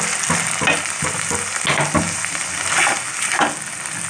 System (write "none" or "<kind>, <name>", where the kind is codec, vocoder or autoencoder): none